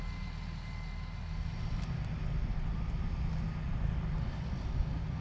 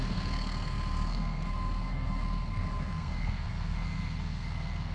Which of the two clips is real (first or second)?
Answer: first